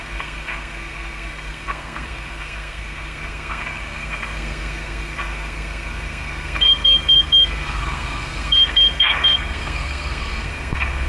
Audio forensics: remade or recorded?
remade